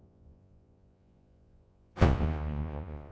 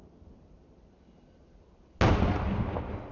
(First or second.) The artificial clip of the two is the first